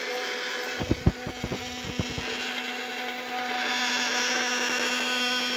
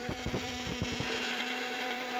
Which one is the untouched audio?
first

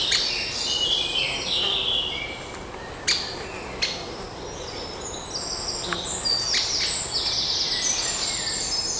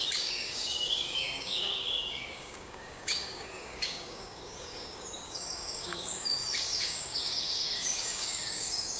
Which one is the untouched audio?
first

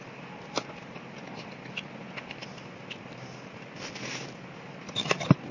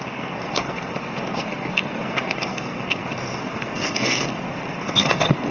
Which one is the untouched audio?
first